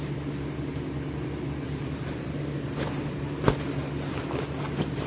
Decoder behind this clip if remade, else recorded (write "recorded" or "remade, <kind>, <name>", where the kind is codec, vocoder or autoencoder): recorded